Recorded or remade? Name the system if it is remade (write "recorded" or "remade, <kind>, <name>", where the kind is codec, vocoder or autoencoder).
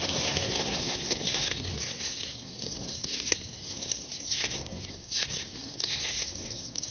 remade, codec, SNAC